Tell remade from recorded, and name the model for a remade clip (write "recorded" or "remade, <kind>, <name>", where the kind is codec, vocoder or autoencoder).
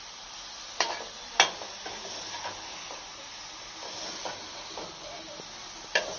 recorded